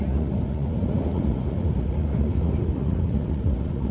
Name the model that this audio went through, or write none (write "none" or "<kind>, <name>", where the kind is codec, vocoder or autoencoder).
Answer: vocoder, Vocos